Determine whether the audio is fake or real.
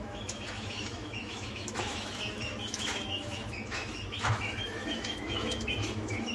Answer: fake